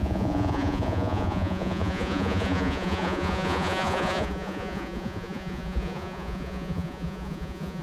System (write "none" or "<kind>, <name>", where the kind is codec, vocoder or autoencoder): vocoder, Vocos